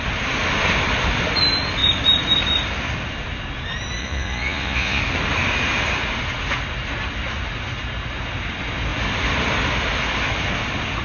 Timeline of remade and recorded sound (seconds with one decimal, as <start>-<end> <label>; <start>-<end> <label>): 0.0-4.0 recorded; 4.0-5.0 remade; 5.0-11.0 recorded